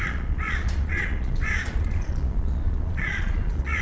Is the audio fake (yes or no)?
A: yes